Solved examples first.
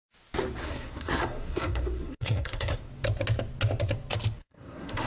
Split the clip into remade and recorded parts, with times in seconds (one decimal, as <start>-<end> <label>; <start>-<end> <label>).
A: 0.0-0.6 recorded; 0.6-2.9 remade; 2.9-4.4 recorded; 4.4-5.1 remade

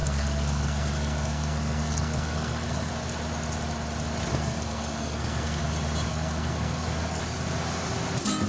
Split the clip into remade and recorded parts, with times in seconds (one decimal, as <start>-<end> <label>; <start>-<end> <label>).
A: 0.0-2.9 remade; 2.9-4.3 recorded; 4.3-5.6 remade; 5.6-6.1 recorded; 6.1-7.2 remade; 7.2-8.5 recorded

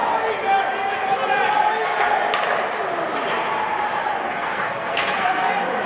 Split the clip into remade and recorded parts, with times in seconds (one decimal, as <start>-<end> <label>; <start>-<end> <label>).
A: 0.0-4.2 recorded; 4.2-5.5 remade; 5.5-5.9 recorded